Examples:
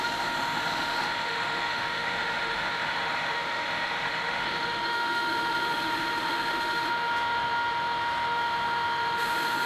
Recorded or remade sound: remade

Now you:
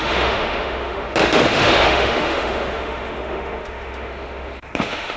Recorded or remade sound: remade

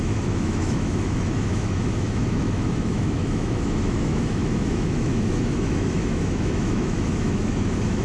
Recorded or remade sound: remade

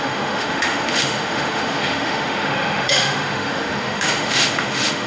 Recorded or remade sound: remade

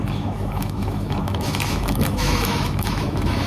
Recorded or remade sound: remade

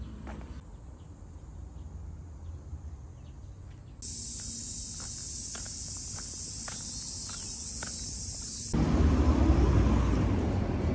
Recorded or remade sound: recorded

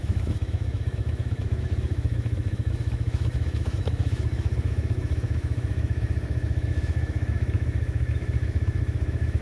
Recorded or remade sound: remade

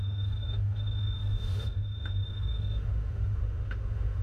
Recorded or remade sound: remade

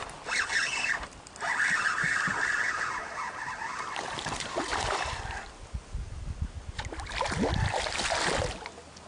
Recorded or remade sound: recorded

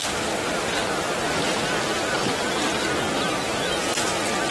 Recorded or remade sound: recorded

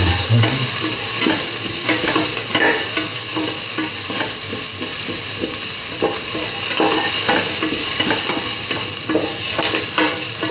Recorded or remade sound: recorded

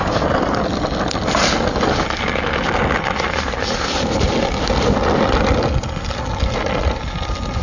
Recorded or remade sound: recorded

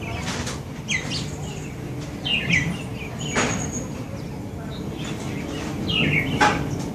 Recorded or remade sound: recorded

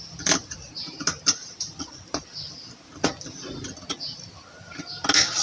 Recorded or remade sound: recorded